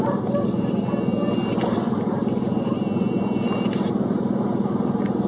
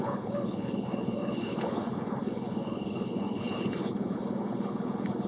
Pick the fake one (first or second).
second